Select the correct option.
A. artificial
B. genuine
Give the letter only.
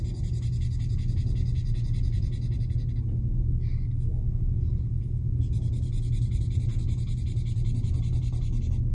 B